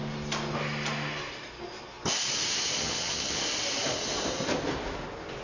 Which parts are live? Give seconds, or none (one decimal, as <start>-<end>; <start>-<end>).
0.0-2.8; 3.4-5.4